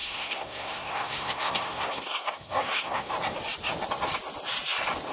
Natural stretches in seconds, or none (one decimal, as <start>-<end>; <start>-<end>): 3.1-5.1